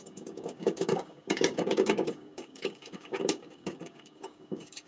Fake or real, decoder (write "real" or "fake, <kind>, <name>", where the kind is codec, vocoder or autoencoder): fake, codec, DAC